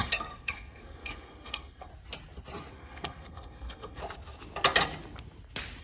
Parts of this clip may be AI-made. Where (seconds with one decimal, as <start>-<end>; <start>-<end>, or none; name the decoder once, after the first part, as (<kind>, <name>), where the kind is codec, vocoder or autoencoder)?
0.0-1.9 (codec, SNAC); 2.7-4.0